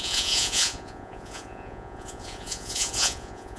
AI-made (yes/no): yes